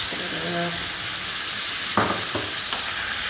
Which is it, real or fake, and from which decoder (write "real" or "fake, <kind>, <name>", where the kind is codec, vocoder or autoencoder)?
real